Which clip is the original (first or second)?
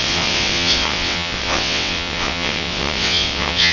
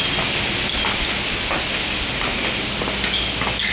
second